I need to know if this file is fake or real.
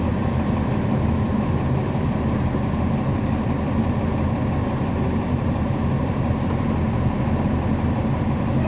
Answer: real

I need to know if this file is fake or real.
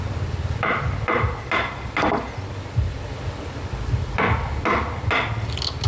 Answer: real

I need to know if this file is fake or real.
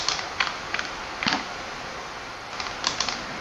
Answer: real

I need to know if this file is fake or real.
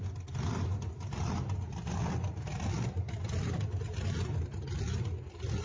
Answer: real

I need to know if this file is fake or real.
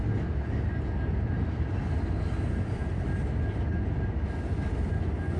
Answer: real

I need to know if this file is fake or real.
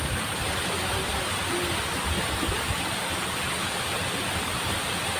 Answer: real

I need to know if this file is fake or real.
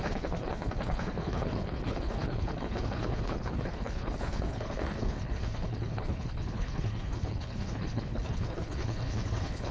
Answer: fake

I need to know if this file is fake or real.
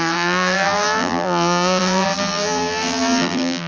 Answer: fake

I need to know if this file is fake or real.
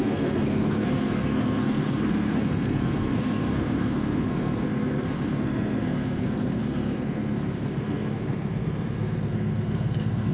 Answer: fake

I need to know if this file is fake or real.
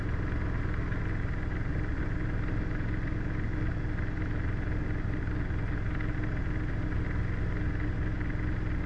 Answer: real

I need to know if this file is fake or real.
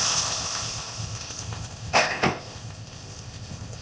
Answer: fake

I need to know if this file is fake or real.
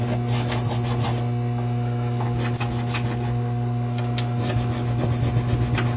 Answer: real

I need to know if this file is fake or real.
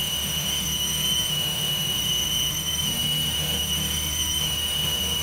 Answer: fake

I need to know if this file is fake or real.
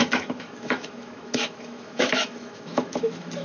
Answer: fake